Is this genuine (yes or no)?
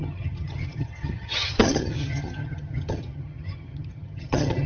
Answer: no